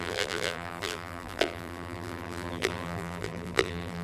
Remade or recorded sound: remade